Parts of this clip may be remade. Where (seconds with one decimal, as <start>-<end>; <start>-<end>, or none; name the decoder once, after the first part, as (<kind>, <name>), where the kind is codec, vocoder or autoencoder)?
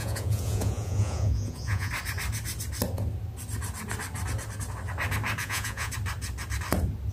0.0-1.9 (vocoder, Vocos); 5.4-5.9